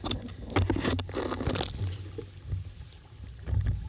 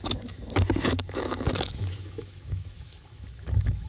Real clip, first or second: first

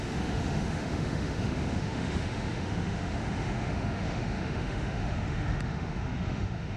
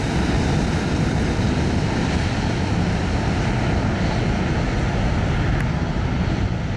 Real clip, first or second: second